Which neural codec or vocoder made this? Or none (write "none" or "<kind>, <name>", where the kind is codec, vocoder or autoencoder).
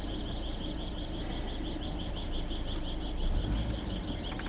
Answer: none